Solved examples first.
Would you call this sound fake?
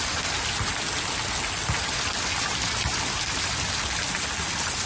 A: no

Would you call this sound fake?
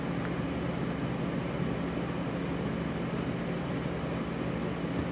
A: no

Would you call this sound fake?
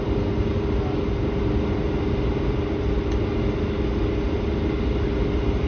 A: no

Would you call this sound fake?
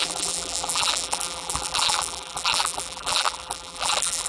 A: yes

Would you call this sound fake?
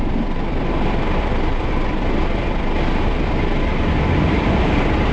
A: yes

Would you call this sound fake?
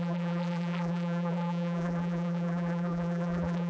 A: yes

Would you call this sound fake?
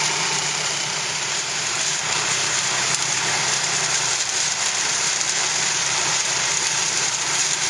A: yes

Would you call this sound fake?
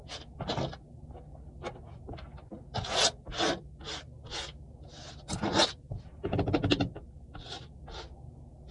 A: no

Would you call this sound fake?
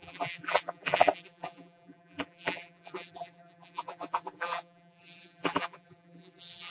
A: yes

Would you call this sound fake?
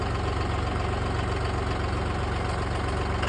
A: no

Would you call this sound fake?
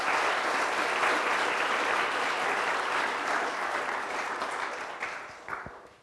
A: no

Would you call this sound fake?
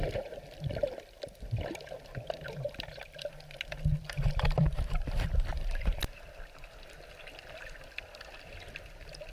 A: yes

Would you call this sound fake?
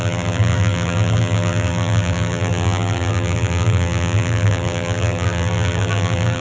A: yes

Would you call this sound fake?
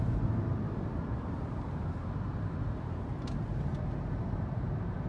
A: yes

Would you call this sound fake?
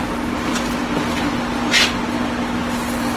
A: no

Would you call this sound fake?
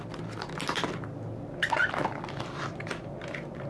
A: yes